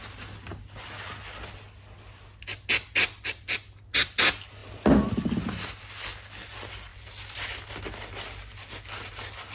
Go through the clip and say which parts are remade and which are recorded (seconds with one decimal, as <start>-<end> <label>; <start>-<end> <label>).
0.0-9.5 recorded